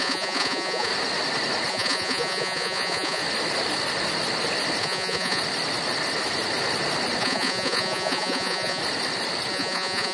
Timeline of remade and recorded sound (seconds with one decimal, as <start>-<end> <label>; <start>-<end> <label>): 0.0-0.9 remade; 0.9-1.7 recorded; 1.7-3.2 remade; 3.2-4.8 recorded; 4.8-5.4 remade; 5.4-7.2 recorded; 7.2-8.8 remade; 8.8-9.5 recorded; 9.5-10.1 remade